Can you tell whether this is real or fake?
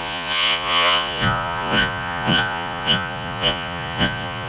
fake